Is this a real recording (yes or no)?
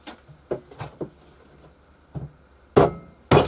yes